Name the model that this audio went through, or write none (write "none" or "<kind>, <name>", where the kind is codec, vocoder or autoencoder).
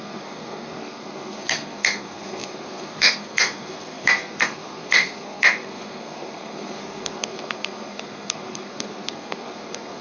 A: codec, SNAC